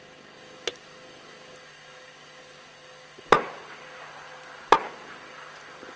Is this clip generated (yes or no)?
no